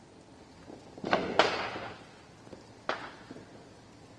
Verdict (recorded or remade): recorded